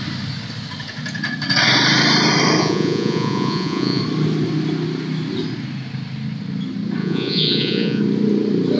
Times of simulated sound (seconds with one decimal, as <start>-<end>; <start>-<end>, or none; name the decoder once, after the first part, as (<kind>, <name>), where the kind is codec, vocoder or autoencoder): 2.6-4.0 (vocoder, Vocos); 7.0-8.0